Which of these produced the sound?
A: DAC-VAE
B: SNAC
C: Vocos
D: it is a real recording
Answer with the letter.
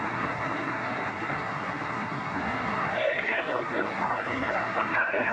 B